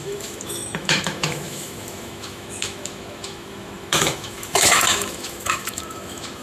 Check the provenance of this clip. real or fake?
fake